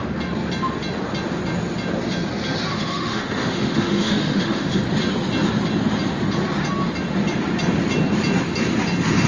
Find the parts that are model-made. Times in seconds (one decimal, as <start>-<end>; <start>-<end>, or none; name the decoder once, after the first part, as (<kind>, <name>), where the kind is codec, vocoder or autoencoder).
2.7-4.8 (autoencoder, DAC-VAE)